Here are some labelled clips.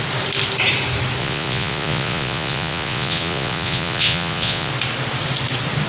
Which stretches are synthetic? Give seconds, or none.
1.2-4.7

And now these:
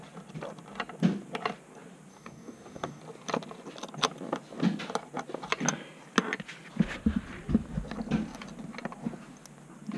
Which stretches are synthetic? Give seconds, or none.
2.1-3.0

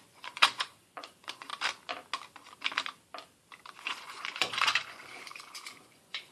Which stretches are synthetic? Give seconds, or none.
0.0-1.5; 3.8-6.3

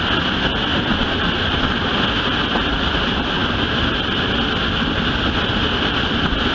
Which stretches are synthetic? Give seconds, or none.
0.7-1.5

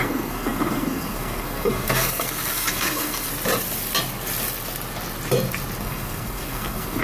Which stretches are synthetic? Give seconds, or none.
0.0-3.3; 5.8-7.0

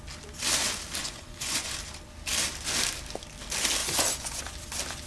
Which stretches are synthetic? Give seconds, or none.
1.0-1.7; 3.8-4.4

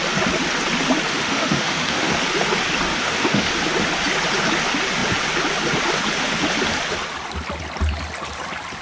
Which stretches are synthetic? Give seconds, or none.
1.1-2.1; 2.9-3.5